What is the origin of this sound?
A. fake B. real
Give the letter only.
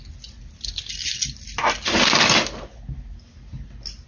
B